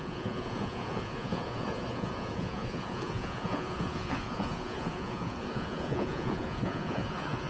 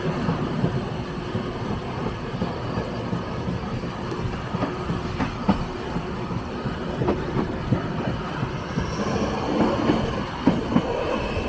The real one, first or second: second